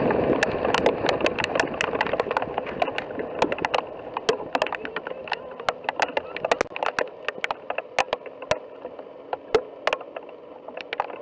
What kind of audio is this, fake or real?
real